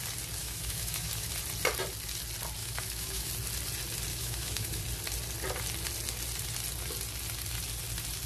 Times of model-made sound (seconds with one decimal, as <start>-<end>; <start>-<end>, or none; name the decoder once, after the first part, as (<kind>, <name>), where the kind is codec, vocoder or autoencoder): 0.4-1.3 (autoencoder, DAC-VAE); 2.6-3.3; 4.1-4.8